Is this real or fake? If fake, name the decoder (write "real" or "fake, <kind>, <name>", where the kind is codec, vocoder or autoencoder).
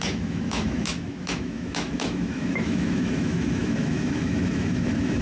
fake, autoencoder, DAC-VAE